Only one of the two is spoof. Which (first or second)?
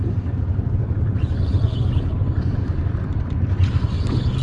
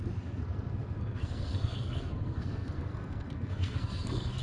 second